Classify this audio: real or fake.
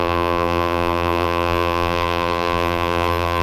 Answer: fake